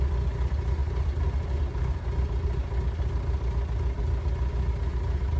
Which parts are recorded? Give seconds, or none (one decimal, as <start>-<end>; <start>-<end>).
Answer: 0.0-5.4